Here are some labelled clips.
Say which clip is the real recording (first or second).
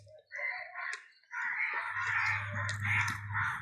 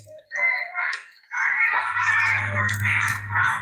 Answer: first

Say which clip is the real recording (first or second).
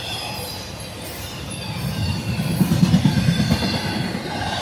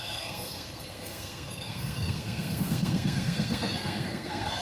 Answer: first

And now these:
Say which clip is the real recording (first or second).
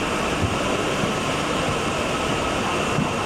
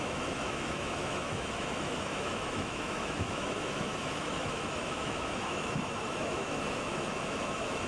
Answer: first